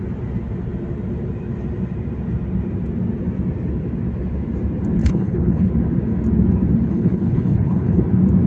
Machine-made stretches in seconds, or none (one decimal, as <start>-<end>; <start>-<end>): 5.0-5.7; 6.9-8.0